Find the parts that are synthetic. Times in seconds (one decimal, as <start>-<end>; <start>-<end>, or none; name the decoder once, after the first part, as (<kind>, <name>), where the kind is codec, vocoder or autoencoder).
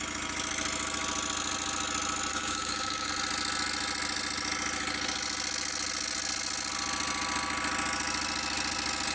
2.3-3.1 (codec, DAC)